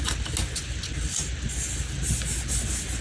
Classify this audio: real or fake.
real